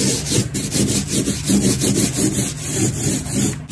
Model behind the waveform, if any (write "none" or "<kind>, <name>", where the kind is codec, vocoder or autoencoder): none